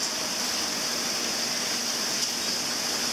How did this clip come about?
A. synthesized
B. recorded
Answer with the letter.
B